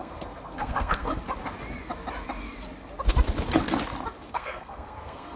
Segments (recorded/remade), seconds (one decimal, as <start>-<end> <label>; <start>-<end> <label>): 0.0-1.1 remade; 1.1-4.3 recorded; 4.3-5.4 remade